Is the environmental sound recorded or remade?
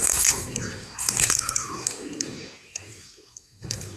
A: remade